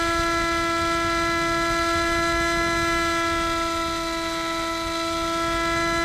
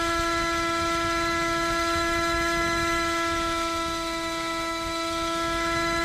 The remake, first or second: second